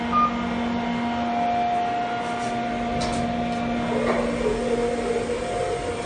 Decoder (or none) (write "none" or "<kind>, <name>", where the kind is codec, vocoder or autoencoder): none